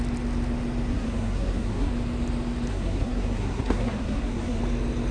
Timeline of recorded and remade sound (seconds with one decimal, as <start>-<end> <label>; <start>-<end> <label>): 0.0-0.9 recorded; 0.9-1.9 remade; 1.9-2.7 recorded; 2.7-4.6 remade; 4.6-5.1 recorded